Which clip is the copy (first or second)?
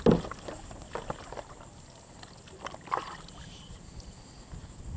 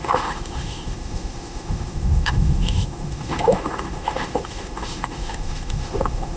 second